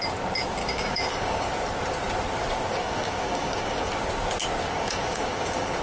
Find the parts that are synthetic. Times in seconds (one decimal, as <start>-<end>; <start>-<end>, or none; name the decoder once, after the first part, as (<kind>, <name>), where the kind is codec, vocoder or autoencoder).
0.6-1.5 (codec, DAC); 2.7-3.9; 4.6-5.8